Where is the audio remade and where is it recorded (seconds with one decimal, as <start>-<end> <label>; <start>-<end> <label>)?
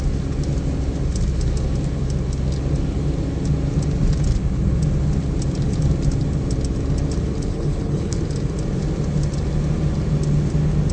0.0-7.5 recorded; 7.5-8.2 remade; 8.2-10.9 recorded